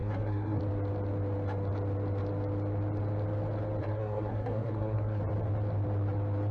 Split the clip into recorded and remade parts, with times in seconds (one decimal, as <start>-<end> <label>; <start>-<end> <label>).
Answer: 0.0-0.6 remade; 0.6-3.8 recorded; 3.8-5.2 remade; 5.2-6.5 recorded